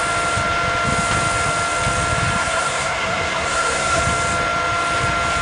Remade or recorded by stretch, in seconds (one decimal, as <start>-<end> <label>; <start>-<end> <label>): 0.0-2.4 recorded; 2.4-4.0 remade; 4.0-5.4 recorded